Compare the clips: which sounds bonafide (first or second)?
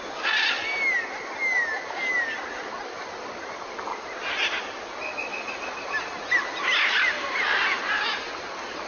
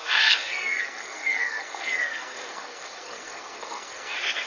first